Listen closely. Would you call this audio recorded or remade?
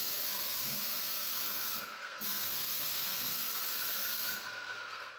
remade